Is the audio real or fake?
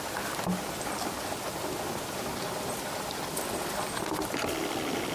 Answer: real